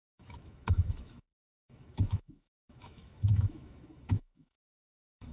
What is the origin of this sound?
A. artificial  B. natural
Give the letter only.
A